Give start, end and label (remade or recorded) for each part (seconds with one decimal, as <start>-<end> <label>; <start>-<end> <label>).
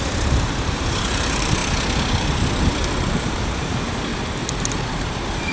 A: 0.0-1.6 remade; 1.6-3.1 recorded; 3.1-4.1 remade; 4.1-4.6 recorded; 4.6-5.5 remade